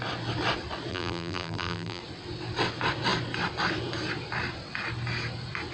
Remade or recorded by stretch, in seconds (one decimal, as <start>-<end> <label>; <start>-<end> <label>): 0.0-0.9 recorded; 0.9-2.0 remade; 2.0-5.7 recorded